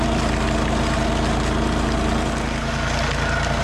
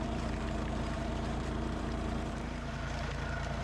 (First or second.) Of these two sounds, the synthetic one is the second